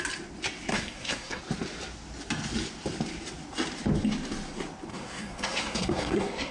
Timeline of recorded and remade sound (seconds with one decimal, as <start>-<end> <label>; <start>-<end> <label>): 0.0-0.7 recorded; 0.7-1.4 remade; 1.4-4.9 recorded; 4.9-6.5 remade